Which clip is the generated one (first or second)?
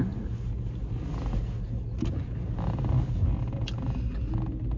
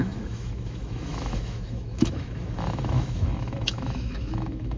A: second